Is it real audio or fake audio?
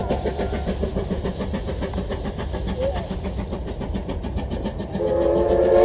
real